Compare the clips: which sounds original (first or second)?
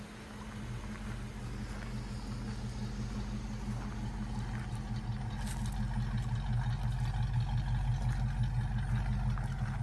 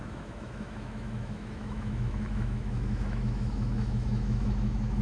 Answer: first